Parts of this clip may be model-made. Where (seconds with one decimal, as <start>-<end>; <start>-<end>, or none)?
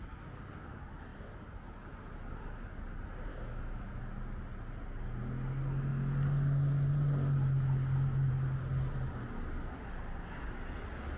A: 3.3-4.0